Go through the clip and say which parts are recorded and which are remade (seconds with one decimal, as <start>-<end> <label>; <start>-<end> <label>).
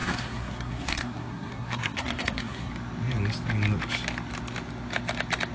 0.0-2.7 remade; 2.7-5.5 recorded